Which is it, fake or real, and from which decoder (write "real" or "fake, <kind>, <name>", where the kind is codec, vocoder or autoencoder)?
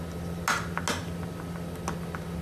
real